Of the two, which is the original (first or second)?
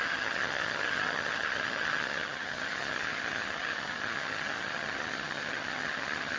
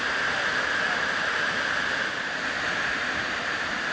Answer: second